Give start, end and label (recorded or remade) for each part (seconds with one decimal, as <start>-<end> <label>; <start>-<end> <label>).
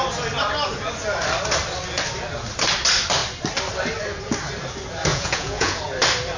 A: 0.0-5.1 recorded; 5.1-5.8 remade; 5.8-6.4 recorded